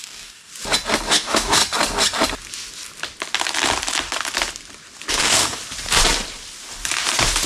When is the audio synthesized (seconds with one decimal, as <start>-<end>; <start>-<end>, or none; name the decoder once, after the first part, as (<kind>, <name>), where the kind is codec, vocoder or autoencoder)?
0.0-0.5 (codec, DAC); 1.1-1.6; 5.1-5.6